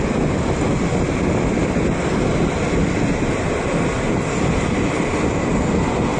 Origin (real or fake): real